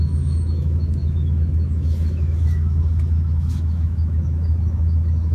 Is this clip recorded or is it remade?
remade